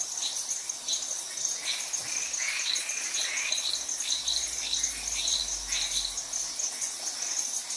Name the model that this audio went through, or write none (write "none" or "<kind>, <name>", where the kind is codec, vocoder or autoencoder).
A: none